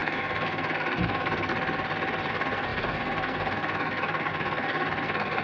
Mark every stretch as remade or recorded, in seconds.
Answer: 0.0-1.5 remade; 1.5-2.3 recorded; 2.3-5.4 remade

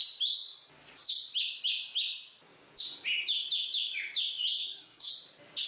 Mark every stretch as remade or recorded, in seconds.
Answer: 0.0-4.6 recorded; 4.6-5.1 remade; 5.1-5.7 recorded

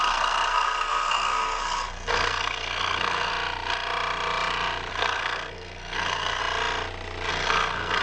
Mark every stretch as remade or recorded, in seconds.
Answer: 0.0-3.3 remade; 3.3-4.9 recorded; 4.9-6.4 remade; 6.4-7.3 recorded; 7.3-8.0 remade

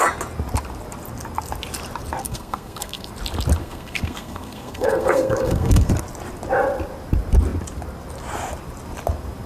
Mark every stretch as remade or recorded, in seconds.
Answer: 0.0-2.2 recorded; 2.2-3.1 remade; 3.1-3.6 recorded; 3.6-5.9 remade; 5.9-9.5 recorded

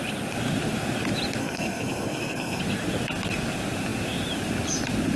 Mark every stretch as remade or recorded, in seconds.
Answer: 0.0-1.4 recorded; 1.4-2.6 remade; 2.6-5.2 recorded

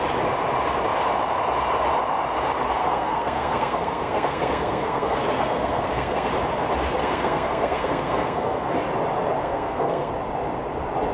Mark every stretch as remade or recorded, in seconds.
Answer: 0.0-2.8 recorded; 2.8-6.3 remade; 6.3-7.0 recorded; 7.0-8.7 remade; 8.7-9.4 recorded; 9.4-10.1 remade; 10.1-11.1 recorded

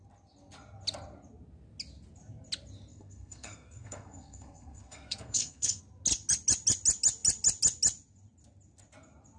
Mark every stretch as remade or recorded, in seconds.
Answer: 0.0-2.9 recorded; 2.9-5.8 remade; 5.8-9.4 recorded